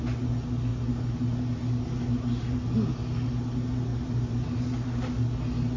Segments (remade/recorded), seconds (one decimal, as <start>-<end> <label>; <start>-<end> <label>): 0.0-5.8 recorded